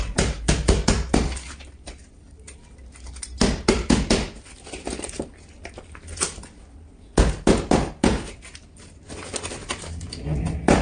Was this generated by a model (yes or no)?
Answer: no